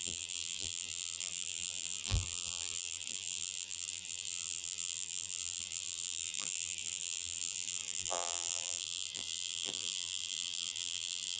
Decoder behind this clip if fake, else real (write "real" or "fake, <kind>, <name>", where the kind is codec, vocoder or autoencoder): fake, vocoder, BigVGAN v2